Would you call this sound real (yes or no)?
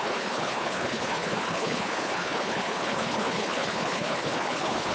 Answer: no